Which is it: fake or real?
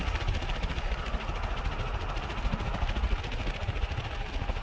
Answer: real